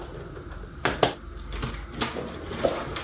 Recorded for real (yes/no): yes